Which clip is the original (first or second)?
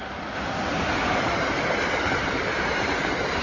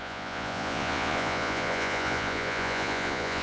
first